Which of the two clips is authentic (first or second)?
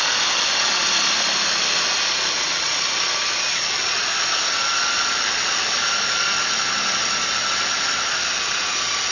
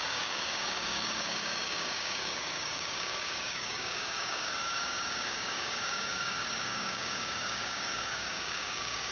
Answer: first